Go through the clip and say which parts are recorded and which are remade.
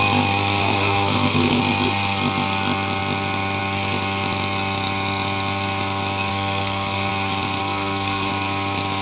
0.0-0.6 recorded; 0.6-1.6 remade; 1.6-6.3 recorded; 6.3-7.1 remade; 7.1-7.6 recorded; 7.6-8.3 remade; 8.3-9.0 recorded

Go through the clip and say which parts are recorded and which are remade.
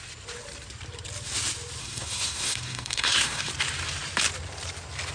0.0-1.8 recorded; 1.8-3.5 remade; 3.5-5.1 recorded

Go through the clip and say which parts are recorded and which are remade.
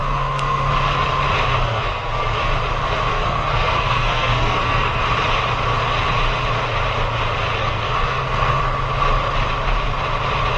0.0-0.7 remade; 0.7-1.5 recorded; 1.5-2.5 remade; 2.5-3.1 recorded; 3.1-5.0 remade; 5.0-7.6 recorded; 7.6-8.6 remade; 8.6-10.6 recorded